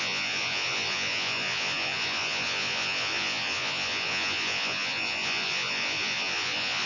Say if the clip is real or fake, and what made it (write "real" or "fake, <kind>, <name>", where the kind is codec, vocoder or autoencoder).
fake, vocoder, Vocos